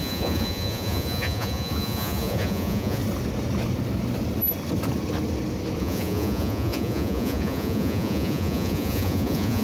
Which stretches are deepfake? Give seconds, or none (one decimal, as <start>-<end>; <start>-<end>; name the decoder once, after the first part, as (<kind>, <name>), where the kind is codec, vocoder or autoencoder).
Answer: 0.0-3.0 (vocoder, Vocos); 5.8-9.6